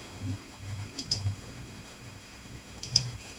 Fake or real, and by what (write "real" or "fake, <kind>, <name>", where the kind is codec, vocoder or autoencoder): fake, autoencoder, DAC-VAE